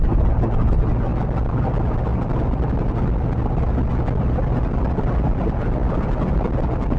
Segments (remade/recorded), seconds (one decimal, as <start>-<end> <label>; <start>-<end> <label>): 0.0-5.8 recorded; 5.8-6.3 remade; 6.3-7.0 recorded